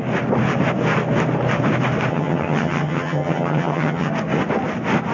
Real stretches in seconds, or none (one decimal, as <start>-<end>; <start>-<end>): 0.0-2.1; 4.1-5.1